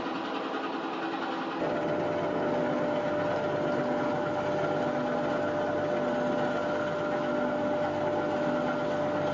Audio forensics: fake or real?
real